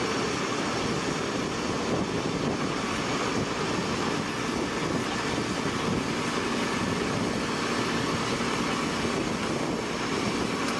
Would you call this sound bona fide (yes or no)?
yes